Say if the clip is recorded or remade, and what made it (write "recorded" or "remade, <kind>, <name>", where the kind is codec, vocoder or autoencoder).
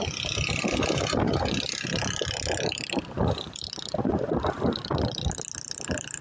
recorded